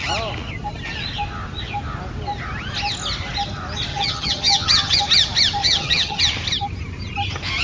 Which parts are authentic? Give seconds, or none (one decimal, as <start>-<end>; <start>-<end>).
0.0-3.9; 5.0-5.6; 6.2-7.6